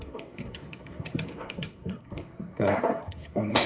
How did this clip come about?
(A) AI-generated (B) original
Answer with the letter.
A